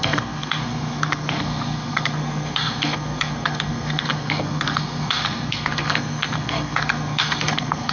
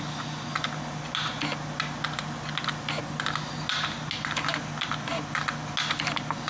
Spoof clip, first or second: first